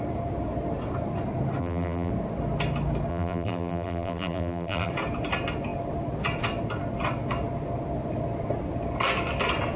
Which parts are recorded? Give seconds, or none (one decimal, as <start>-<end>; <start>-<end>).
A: 0.0-1.6; 2.1-3.1; 4.9-9.8